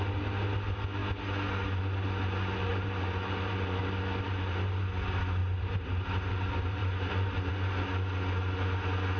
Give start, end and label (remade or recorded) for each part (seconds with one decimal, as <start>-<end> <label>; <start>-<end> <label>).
0.0-2.7 recorded; 2.7-3.8 remade; 3.8-5.4 recorded; 5.4-6.1 remade; 6.1-6.8 recorded; 6.8-7.5 remade; 7.5-9.2 recorded